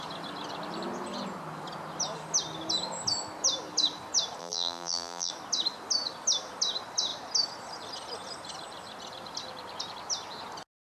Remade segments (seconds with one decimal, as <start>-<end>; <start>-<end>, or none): 4.4-5.3

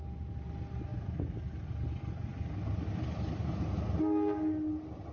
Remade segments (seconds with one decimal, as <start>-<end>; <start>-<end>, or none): 0.9-4.0

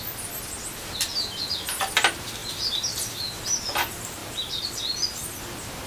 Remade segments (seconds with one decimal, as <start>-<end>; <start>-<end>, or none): 4.2-4.7

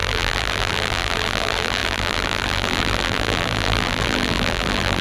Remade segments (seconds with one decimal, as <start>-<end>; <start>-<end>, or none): 0.0-5.0